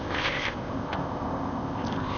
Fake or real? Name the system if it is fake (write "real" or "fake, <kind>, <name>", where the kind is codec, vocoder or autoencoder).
fake, codec, ZipCodec